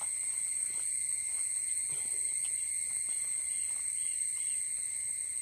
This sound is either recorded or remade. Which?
recorded